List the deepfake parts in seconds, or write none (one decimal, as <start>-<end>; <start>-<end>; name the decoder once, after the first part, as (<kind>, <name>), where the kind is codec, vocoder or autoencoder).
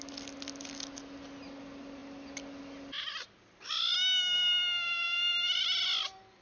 none